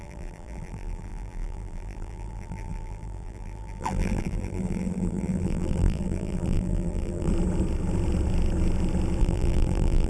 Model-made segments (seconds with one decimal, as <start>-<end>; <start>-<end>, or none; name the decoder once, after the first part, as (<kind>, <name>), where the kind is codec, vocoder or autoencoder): 0.0-7.3 (vocoder, BigVGAN v2); 9.2-10.1